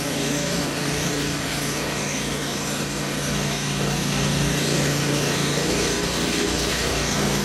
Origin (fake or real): fake